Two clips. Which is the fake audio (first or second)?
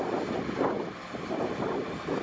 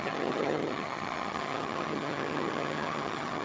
second